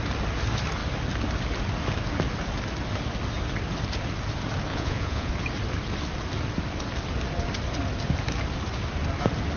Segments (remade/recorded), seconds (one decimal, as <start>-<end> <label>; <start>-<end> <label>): 0.0-4.7 recorded; 4.7-5.3 remade; 5.3-9.6 recorded